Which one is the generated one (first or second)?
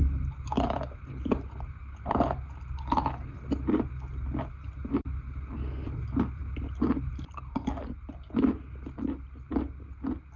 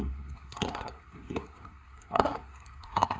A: second